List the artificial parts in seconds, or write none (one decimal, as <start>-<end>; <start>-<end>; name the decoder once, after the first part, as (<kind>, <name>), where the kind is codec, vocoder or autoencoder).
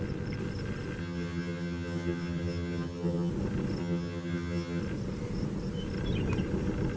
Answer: 1.0-3.3 (vocoder, HiFi-GAN); 3.8-4.8